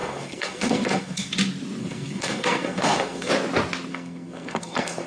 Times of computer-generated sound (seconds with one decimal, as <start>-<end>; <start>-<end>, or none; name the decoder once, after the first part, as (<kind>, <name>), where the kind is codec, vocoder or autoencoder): 0.0-1.3 (codec, SNAC); 1.8-3.3; 3.9-5.1